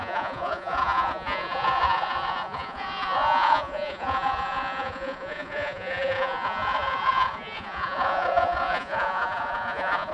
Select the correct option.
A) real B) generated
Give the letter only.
B